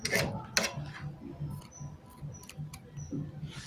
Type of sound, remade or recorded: recorded